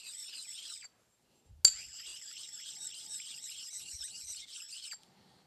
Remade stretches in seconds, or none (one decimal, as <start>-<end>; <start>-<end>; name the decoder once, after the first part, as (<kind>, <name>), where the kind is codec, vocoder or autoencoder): 2.1-4.5 (vocoder, BigVGAN v2)